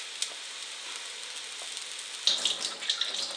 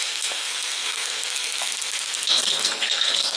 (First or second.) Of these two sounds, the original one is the first